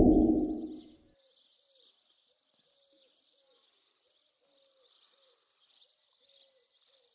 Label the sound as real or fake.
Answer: real